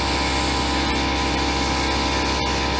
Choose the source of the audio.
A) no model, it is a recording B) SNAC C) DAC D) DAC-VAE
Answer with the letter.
A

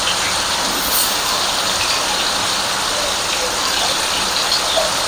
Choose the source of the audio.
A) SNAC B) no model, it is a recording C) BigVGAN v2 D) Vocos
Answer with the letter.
B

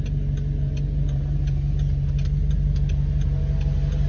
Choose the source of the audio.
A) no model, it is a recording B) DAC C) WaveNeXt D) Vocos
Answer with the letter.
A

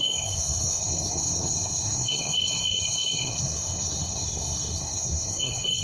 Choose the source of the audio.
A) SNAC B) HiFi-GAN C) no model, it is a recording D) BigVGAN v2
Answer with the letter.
A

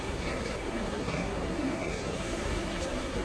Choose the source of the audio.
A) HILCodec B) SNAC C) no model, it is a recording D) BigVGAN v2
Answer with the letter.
B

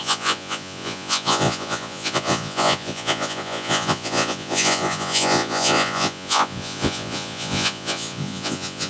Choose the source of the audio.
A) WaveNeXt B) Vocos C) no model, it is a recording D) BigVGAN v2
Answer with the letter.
B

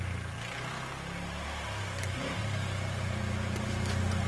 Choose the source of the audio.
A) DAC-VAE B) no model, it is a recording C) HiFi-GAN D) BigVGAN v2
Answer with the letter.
B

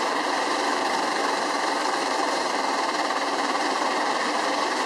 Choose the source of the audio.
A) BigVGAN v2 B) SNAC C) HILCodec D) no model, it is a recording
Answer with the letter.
A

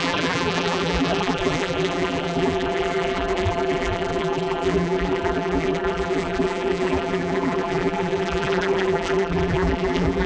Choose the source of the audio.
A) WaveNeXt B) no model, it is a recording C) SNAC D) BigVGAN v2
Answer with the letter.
D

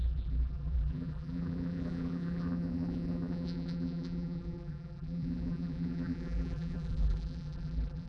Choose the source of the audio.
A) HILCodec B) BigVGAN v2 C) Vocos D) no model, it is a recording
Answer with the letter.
B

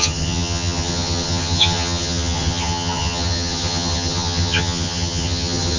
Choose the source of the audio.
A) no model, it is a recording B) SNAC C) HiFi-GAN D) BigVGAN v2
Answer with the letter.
C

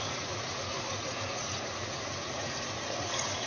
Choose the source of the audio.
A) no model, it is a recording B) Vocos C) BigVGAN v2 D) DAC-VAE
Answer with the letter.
B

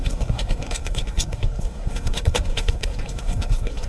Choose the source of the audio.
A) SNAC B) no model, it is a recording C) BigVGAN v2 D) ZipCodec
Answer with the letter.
A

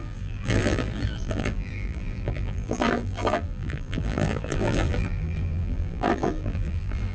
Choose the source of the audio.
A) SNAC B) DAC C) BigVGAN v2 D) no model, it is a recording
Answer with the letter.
C